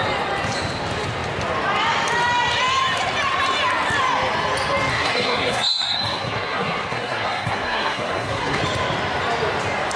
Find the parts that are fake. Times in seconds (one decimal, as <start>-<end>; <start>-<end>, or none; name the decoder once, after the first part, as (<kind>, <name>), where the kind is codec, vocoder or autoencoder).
4.9-8.6 (codec, SNAC)